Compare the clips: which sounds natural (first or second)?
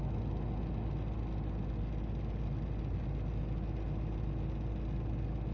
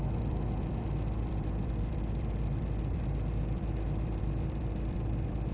first